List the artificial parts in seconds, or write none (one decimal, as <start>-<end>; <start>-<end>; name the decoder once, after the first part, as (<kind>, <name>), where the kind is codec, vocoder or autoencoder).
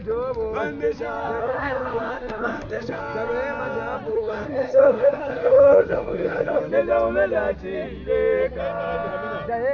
1.4-3.0 (codec, SNAC); 4.1-6.6